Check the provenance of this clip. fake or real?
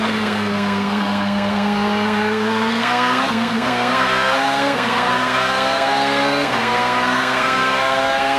fake